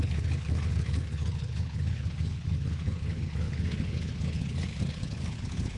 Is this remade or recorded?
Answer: remade